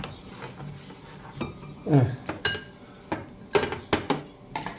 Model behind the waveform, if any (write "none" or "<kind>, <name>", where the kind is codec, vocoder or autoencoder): none